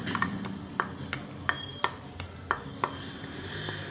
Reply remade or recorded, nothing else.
recorded